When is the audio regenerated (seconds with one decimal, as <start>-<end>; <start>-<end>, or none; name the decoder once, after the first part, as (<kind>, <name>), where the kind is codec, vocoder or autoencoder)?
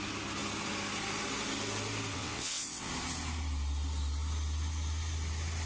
2.1-2.9 (vocoder, WaveNeXt)